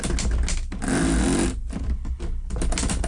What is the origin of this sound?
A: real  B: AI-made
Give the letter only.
A